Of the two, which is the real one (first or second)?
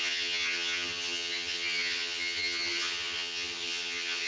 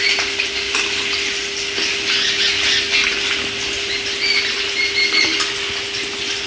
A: second